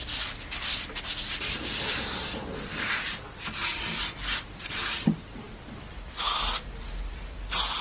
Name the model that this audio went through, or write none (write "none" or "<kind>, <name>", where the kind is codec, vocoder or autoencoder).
none